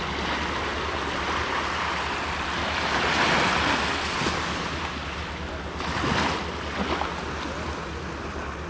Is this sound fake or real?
real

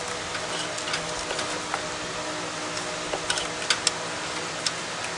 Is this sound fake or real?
real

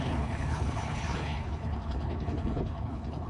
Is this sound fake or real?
fake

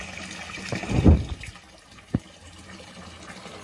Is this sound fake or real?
real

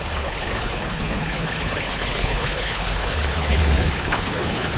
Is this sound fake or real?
fake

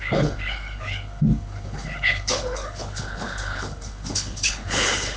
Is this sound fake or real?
fake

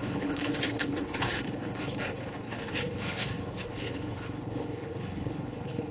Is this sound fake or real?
fake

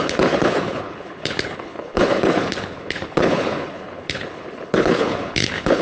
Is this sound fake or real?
fake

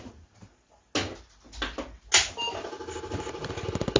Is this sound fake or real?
real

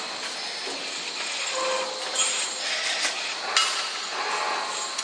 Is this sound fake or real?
real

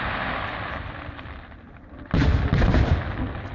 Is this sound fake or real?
real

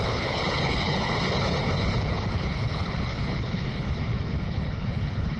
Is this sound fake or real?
fake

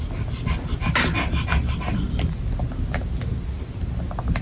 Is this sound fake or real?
real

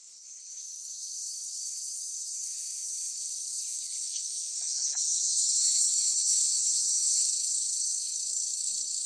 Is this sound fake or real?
fake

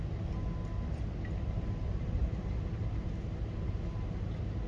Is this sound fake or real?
real